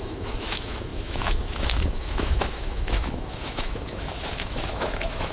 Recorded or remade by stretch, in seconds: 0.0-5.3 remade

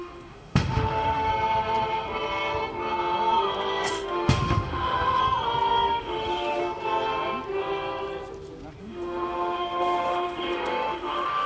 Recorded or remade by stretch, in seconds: 0.0-1.3 remade; 1.3-3.9 recorded; 3.9-5.2 remade; 5.2-6.0 recorded; 6.0-6.6 remade; 6.6-8.8 recorded; 8.8-11.5 remade

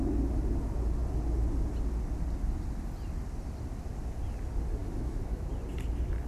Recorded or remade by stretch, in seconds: 0.0-4.8 recorded; 4.8-5.5 remade; 5.5-6.3 recorded

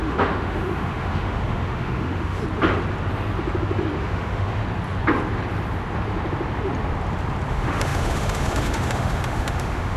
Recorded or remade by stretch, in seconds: 0.0-2.4 remade; 2.4-4.0 recorded; 4.0-4.6 remade; 4.6-7.5 recorded; 7.5-10.0 remade